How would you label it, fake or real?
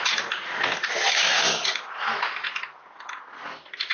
real